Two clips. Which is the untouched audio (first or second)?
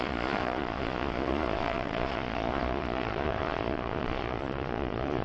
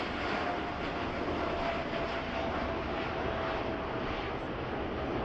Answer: second